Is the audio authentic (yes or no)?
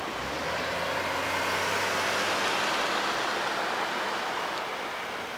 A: yes